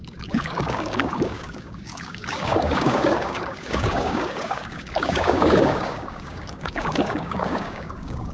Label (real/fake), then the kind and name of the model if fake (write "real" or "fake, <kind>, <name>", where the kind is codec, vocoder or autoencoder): fake, codec, DAC